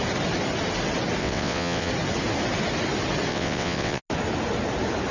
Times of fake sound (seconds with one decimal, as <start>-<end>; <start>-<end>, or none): 1.2-1.9; 3.3-4.0